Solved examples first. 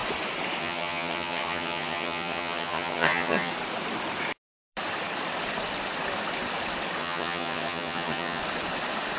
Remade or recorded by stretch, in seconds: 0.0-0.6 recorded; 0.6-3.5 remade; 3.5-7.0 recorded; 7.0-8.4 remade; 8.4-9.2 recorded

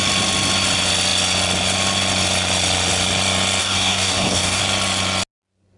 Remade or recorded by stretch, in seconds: 0.0-3.6 recorded; 3.6-4.6 remade; 4.6-5.8 recorded

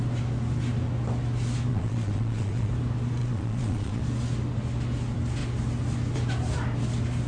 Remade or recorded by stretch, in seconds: 0.0-1.7 recorded; 1.7-2.7 remade; 2.7-3.2 recorded; 3.2-4.0 remade; 4.0-7.3 recorded

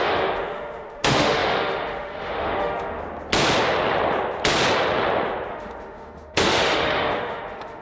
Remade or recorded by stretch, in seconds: 0.0-3.0 remade; 3.0-5.5 recorded; 5.5-7.8 remade

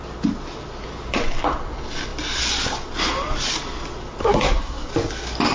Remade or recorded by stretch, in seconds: 0.0-4.2 recorded; 4.2-4.9 remade; 4.9-5.5 recorded